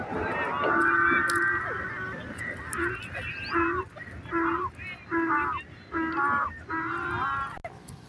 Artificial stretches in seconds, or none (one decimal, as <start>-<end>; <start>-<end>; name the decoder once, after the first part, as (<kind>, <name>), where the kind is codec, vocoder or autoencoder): none

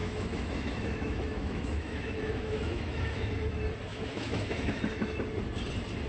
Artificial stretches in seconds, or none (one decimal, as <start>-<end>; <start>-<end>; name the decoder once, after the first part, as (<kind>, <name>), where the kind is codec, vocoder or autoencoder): 0.0-3.3 (autoencoder, DAC-VAE); 3.9-4.8

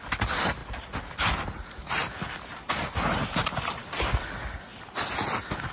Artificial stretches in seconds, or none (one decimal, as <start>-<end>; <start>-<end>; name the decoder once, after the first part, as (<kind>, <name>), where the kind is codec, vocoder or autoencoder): none

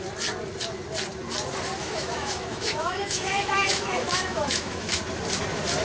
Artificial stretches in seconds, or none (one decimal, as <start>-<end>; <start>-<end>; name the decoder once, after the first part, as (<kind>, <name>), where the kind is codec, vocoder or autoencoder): 1.8-5.0 (autoencoder, DAC-VAE)

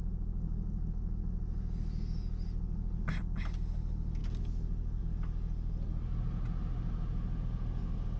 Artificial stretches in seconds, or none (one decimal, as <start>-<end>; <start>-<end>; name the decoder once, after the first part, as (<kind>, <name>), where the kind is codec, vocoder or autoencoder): none

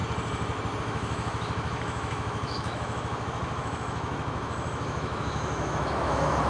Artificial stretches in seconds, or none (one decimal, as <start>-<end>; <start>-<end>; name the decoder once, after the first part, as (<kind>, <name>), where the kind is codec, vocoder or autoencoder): 0.8-6.5 (autoencoder, DAC-VAE)

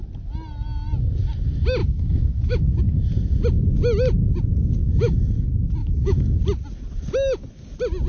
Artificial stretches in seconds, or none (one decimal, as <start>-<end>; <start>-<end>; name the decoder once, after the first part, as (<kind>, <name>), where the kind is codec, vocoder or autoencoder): 1.8-2.8 (autoencoder, DAC-VAE); 4.8-5.3; 5.8-6.4

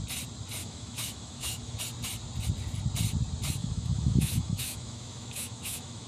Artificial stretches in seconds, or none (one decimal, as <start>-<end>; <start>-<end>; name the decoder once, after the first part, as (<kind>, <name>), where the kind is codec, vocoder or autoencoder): 0.6-1.8 (autoencoder, DAC-VAE); 3.6-6.1